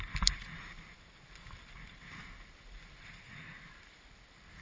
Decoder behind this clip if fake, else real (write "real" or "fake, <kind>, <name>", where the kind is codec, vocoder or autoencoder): real